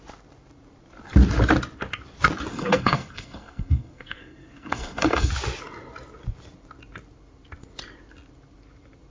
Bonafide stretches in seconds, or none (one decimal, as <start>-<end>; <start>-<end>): 0.0-2.5; 5.3-9.1